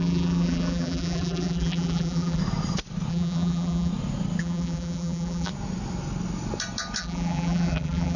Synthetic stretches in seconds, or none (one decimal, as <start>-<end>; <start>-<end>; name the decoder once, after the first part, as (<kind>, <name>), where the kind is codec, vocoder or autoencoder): 0.0-2.4 (vocoder, BigVGAN v2); 3.1-3.9; 4.4-5.5; 7.0-8.2